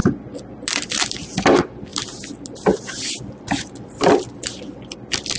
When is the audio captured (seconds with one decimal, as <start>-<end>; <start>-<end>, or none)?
1.0-1.9